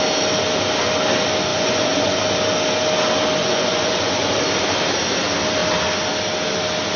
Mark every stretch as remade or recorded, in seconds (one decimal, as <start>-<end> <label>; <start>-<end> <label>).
0.0-1.5 recorded; 1.5-2.2 remade; 2.2-3.4 recorded; 3.4-4.3 remade; 4.3-7.0 recorded